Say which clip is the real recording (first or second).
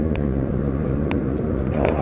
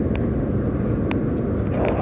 second